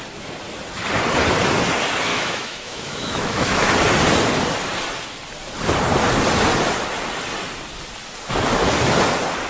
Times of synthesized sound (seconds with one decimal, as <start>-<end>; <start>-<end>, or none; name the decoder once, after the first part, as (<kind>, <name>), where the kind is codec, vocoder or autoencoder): 2.1-3.7 (autoencoder, DAC-VAE)